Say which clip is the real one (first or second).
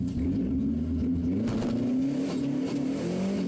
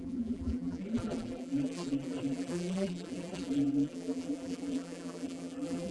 first